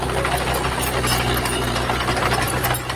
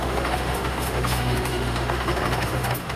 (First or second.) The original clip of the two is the first